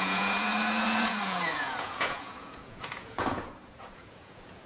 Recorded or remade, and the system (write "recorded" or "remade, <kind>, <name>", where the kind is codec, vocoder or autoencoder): remade, vocoder, Vocos